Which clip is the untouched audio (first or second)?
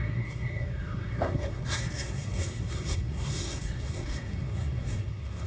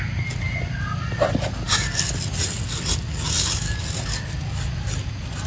second